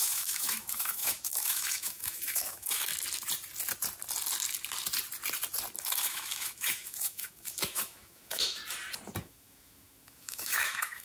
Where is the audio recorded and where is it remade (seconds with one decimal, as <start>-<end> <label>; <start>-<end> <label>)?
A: 0.0-2.9 remade; 2.9-5.8 recorded; 5.8-8.6 remade; 8.6-9.2 recorded; 9.2-11.0 remade